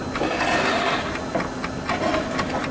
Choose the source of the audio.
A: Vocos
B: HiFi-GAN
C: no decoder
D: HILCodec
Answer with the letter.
C